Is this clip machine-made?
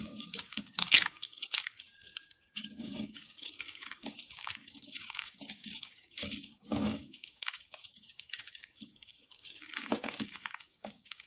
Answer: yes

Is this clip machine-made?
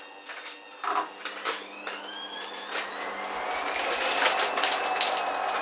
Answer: no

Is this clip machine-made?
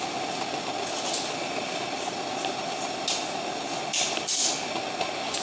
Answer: no